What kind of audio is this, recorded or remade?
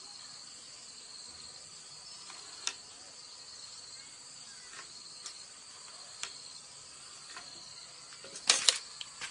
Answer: recorded